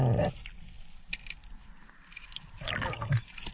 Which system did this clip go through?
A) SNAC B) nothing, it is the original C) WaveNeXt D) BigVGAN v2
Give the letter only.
B